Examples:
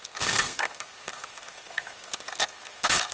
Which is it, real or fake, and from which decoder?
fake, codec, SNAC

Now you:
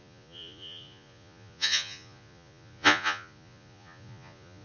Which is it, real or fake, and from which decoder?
fake, vocoder, Vocos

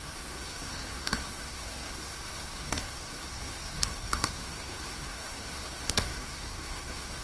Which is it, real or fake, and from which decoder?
fake, codec, SNAC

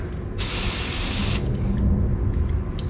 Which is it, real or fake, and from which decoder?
real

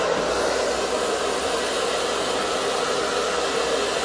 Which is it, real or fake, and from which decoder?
real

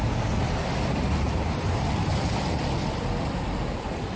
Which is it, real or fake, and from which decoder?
fake, vocoder, BigVGAN v2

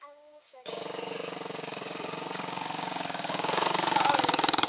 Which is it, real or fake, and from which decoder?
fake, codec, DAC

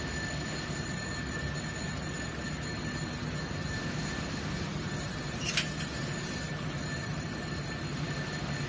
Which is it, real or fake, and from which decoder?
real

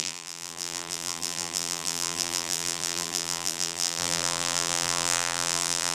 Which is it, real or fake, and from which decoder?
fake, vocoder, BigVGAN v2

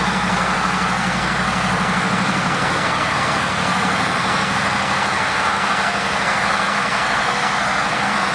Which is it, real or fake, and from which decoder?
fake, codec, SNAC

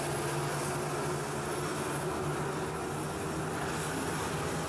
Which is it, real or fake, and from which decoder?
real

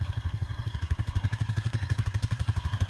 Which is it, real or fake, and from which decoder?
fake, codec, SNAC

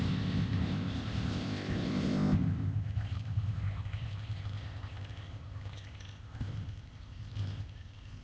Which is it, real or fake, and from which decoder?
fake, codec, ZipCodec